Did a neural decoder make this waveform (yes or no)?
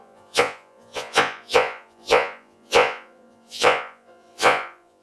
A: yes